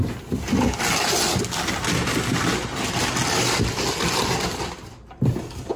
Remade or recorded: recorded